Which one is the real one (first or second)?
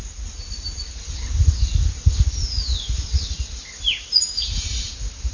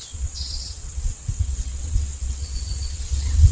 first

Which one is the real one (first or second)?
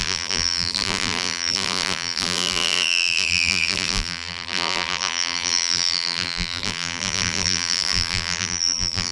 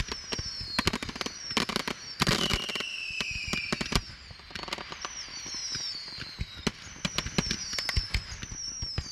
second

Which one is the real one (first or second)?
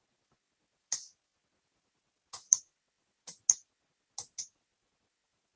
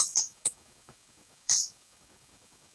first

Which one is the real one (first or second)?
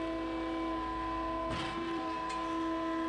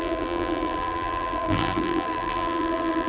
first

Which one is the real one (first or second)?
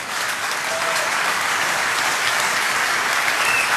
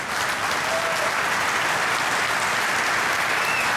second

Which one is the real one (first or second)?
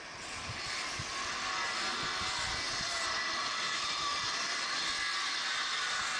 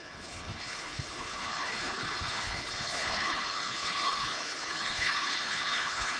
first